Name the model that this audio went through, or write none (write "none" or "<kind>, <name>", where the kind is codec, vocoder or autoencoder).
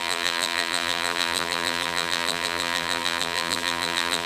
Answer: vocoder, BigVGAN v2